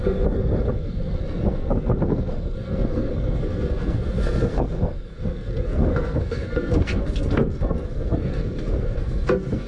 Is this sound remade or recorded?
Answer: remade